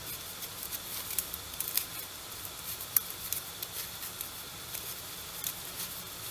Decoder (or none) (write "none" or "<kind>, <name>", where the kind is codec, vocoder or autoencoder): vocoder, BigVGAN v2